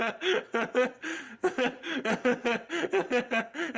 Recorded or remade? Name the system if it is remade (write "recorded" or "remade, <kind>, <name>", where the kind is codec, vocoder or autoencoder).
remade, vocoder, WaveNeXt